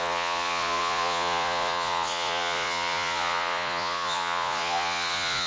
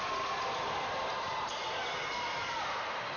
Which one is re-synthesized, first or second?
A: first